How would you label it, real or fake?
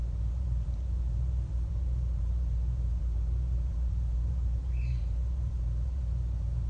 fake